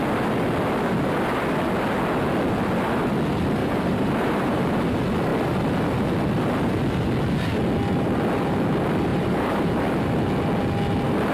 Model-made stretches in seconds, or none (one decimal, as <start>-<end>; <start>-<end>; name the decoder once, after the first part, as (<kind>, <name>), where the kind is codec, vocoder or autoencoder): 3.6-4.6 (vocoder, BigVGAN v2); 9.1-9.7